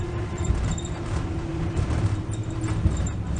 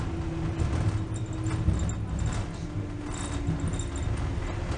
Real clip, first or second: second